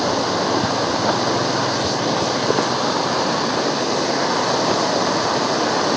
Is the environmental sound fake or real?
real